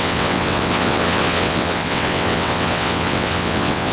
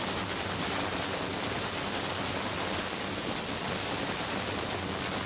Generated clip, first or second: first